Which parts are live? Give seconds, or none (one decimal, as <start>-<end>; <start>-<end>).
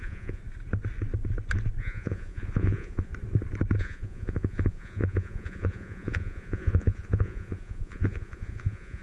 0.4-1.8; 3.1-3.8